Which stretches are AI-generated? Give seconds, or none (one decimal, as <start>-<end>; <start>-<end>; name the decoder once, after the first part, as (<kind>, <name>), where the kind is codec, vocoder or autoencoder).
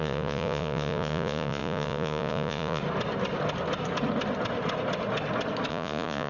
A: 0.0-2.8 (vocoder, Vocos); 5.7-6.3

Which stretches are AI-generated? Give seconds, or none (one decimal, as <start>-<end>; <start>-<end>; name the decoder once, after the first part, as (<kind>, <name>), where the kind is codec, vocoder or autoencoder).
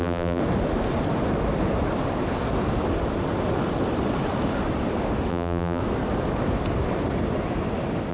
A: 0.0-0.4 (vocoder, BigVGAN v2); 5.3-5.8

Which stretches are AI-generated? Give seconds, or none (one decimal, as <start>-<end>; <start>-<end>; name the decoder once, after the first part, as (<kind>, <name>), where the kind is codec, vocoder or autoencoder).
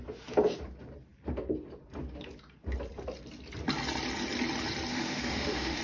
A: 4.9-5.8 (autoencoder, DAC-VAE)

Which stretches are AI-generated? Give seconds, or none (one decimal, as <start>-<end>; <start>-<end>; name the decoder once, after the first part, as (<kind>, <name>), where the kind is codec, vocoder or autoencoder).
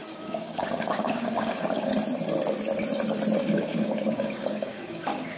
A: 0.0-1.9 (codec, DAC); 3.4-5.4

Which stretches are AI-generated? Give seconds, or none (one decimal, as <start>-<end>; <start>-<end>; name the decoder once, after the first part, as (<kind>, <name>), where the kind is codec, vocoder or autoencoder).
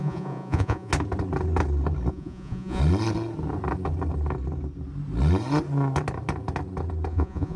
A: 0.0-0.9 (vocoder, Vocos); 2.1-2.8; 7.1-7.6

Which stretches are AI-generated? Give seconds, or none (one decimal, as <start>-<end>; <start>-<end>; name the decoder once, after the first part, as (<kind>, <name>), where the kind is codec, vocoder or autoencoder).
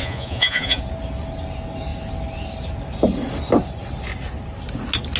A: 0.0-0.8 (vocoder, Vocos)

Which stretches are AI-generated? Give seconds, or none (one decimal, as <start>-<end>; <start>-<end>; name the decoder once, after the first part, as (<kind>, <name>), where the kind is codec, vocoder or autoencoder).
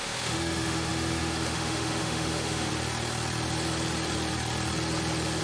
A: 0.0-2.7 (autoencoder, DAC-VAE)